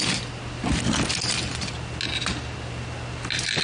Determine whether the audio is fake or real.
real